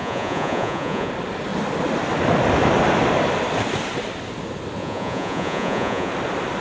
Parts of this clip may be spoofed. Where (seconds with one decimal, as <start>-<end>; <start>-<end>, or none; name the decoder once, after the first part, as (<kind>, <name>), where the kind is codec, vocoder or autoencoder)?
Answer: 0.0-1.1 (vocoder, Vocos); 4.8-6.1